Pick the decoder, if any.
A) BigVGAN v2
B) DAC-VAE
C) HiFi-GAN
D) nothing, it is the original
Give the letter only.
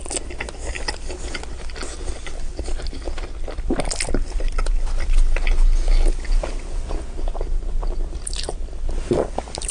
D